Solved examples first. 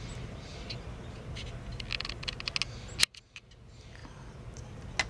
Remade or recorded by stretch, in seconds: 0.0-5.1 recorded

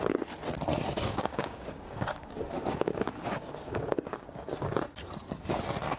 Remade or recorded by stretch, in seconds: 0.0-0.9 recorded; 0.9-4.5 remade; 4.5-6.0 recorded